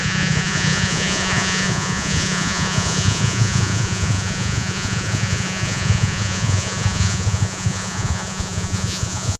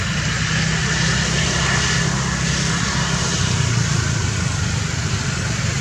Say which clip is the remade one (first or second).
first